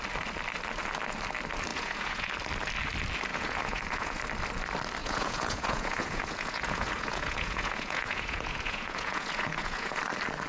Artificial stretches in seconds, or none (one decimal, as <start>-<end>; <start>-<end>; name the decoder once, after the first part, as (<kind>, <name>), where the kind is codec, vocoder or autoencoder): 1.7-2.3 (vocoder, Vocos); 3.3-4.2; 5.0-10.0